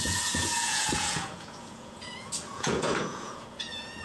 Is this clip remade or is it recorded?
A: remade